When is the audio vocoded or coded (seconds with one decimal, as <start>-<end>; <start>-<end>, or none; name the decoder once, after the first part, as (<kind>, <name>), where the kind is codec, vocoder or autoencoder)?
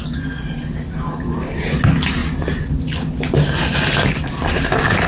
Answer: none